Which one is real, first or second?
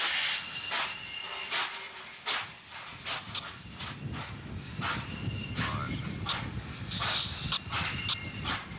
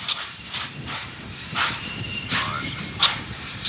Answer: first